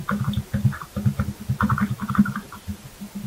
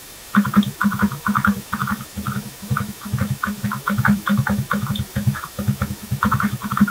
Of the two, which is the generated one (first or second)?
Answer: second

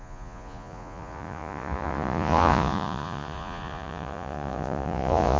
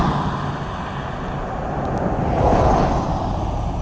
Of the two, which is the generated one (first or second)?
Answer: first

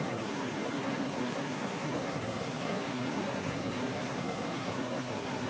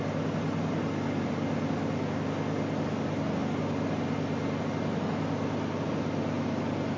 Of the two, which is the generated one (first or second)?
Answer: first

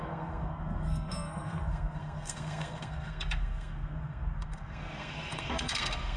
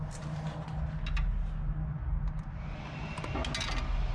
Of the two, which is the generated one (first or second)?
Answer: first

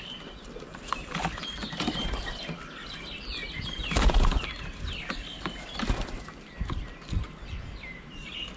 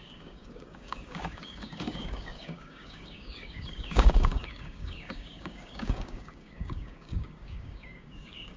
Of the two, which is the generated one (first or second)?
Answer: second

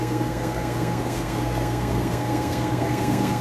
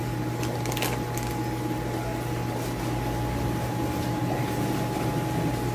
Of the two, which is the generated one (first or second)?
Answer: first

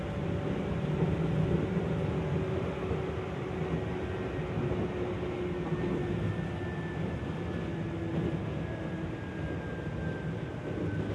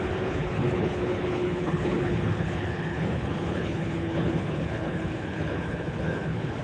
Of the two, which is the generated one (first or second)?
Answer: second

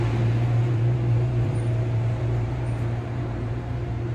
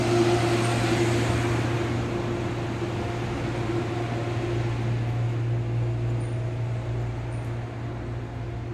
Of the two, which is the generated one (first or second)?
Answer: first